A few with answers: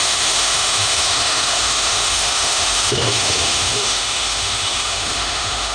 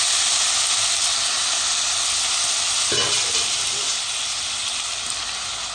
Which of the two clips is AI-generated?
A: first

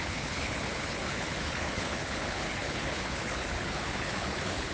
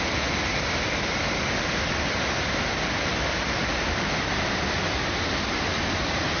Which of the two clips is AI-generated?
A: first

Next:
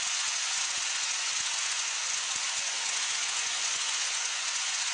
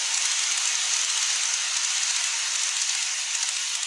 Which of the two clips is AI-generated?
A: first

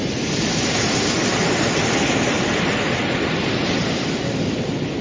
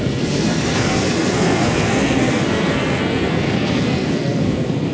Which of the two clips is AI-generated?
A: second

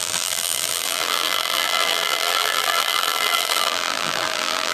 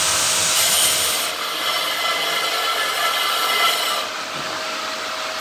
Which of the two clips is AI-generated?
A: first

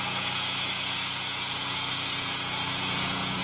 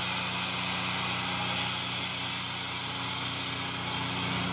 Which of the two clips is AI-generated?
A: first